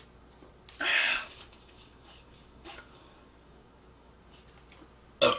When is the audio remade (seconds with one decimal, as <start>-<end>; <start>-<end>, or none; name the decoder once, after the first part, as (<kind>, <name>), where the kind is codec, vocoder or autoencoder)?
0.9-4.1 (codec, DAC)